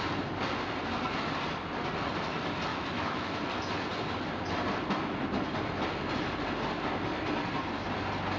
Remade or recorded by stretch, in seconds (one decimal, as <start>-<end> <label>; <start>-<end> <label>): 0.0-2.7 recorded; 2.7-3.4 remade; 3.4-8.4 recorded